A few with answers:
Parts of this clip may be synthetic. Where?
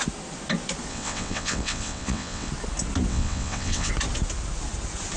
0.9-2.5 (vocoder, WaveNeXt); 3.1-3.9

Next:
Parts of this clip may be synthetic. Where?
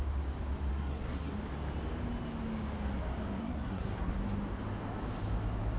0.7-1.3 (codec, SNAC); 3.4-4.2